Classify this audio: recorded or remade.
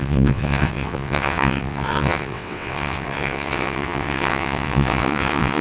remade